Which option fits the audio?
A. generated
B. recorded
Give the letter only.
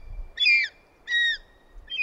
A